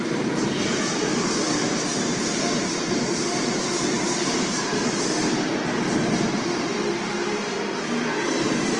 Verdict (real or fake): fake